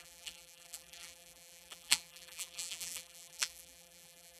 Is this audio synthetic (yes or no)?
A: yes